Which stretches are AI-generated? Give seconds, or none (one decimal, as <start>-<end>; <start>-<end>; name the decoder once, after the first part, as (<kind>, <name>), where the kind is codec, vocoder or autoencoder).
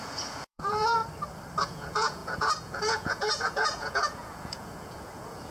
0.0-1.0 (vocoder, Vocos); 1.6-5.5